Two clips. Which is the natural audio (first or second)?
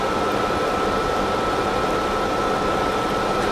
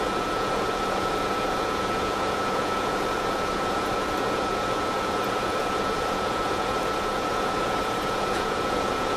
first